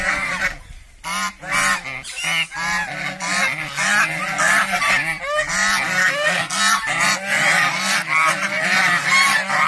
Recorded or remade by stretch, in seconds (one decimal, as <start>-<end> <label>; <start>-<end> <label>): 0.0-6.0 recorded; 6.0-6.6 remade; 6.6-9.7 recorded